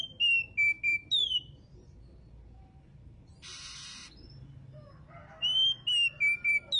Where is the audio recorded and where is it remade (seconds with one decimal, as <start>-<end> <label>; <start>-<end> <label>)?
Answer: 0.0-1.2 recorded; 1.2-5.3 remade; 5.3-6.8 recorded